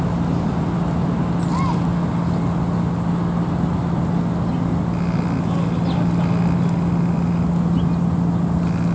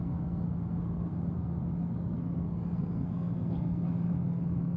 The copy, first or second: second